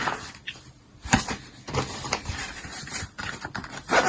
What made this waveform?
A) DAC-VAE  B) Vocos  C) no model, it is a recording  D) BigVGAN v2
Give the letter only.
D